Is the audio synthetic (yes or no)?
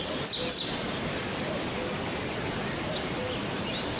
no